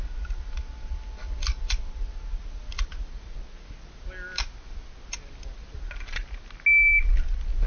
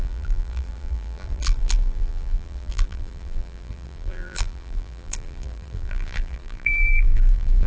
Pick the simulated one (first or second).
second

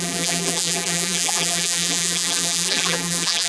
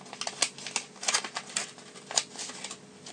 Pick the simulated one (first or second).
first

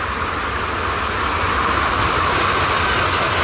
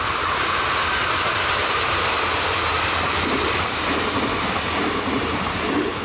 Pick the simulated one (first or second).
second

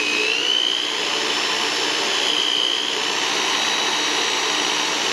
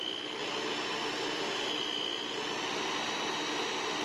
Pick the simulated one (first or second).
first